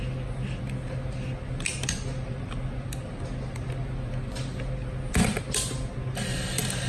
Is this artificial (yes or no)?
no